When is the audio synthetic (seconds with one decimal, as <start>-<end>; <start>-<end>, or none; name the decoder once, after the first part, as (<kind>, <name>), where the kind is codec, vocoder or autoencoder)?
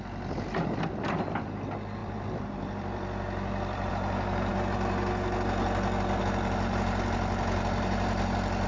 2.0-3.9 (vocoder, BigVGAN v2)